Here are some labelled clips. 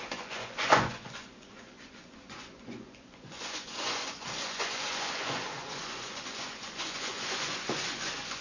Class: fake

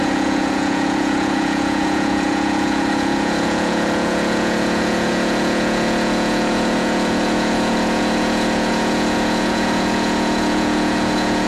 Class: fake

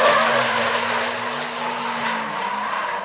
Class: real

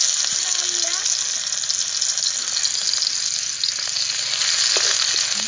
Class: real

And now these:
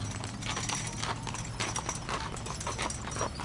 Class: real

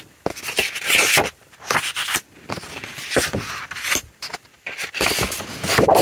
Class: real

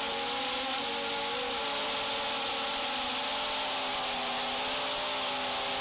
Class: real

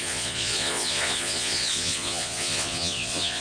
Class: fake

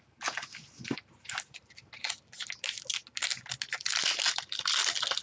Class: real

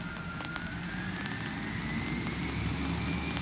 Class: real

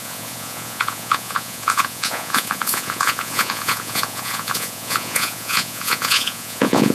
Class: fake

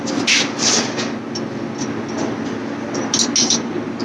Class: real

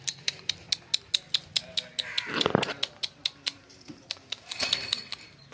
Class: real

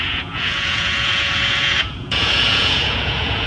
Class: fake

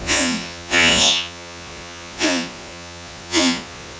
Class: fake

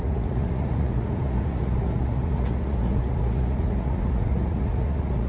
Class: fake